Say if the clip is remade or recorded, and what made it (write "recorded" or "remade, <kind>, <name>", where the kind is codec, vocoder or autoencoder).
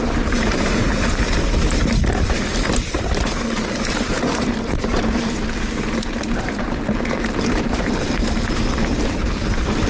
remade, vocoder, BigVGAN v2